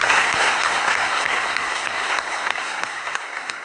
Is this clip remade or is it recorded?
remade